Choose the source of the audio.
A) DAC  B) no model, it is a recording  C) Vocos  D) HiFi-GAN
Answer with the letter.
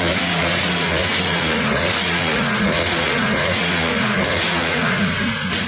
C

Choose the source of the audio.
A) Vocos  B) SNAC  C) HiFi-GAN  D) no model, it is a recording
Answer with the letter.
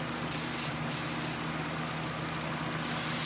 D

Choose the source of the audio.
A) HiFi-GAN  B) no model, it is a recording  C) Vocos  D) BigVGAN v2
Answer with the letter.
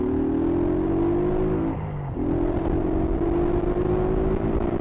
B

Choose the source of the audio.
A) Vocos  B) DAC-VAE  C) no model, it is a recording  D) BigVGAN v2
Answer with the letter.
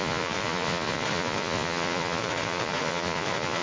A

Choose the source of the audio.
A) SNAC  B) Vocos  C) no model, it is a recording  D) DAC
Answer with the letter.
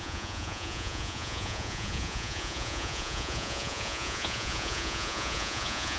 B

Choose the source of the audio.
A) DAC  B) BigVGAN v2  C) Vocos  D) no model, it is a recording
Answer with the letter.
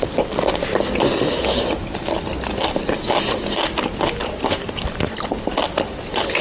D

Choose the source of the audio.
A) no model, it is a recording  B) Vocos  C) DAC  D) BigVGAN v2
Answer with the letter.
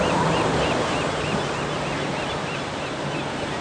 A